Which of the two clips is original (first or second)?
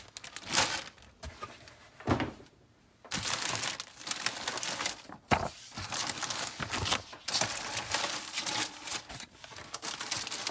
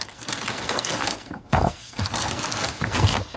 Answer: first